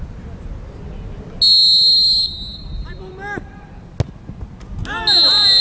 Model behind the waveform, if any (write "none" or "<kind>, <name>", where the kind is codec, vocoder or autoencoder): none